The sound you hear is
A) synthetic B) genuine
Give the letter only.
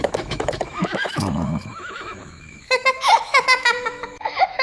A